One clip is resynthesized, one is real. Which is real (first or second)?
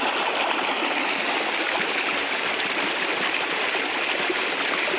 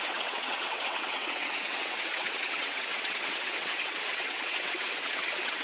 first